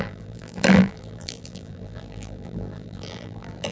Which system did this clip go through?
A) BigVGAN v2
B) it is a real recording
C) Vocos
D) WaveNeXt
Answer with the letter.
A